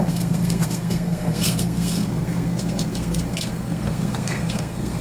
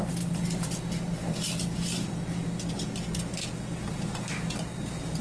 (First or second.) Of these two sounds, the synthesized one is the first